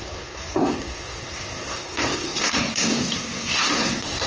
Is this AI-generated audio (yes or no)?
yes